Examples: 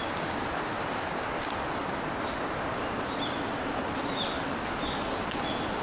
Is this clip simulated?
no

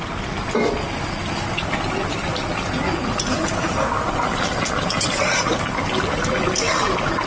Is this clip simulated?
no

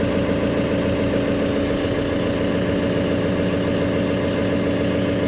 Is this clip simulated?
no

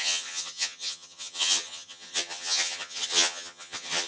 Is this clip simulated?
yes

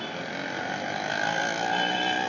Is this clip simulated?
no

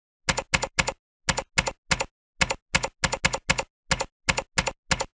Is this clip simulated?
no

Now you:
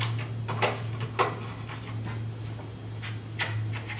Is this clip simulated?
no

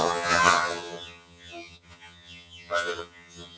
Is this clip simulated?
yes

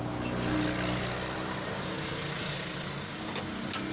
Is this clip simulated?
no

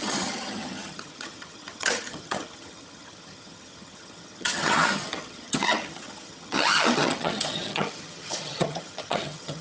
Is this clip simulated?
yes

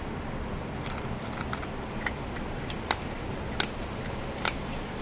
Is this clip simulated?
no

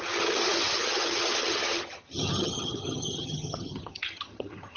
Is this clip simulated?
yes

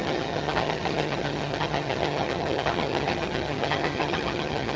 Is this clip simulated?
yes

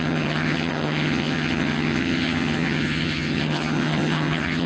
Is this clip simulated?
yes